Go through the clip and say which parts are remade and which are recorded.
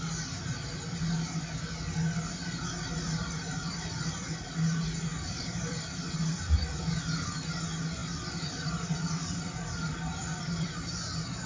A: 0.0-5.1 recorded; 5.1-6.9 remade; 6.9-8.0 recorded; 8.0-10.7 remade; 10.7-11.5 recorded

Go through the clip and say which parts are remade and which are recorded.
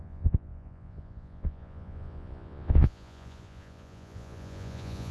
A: 0.0-5.1 remade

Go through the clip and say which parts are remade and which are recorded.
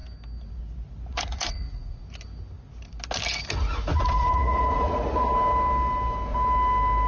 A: 0.0-1.1 recorded; 1.1-2.0 remade; 2.0-3.9 recorded; 3.9-5.3 remade; 5.3-7.1 recorded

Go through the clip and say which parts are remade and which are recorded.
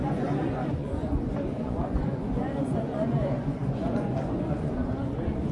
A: 0.0-5.5 remade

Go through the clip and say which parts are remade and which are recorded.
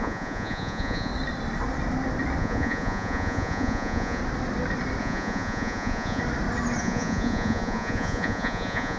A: 0.0-1.1 remade; 1.1-2.4 recorded; 2.4-4.2 remade; 4.2-5.0 recorded; 5.0-6.2 remade; 6.2-6.8 recorded; 6.8-9.0 remade